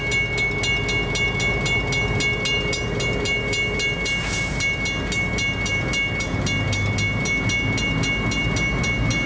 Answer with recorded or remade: recorded